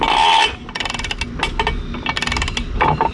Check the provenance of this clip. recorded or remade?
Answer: recorded